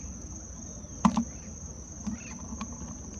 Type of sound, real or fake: real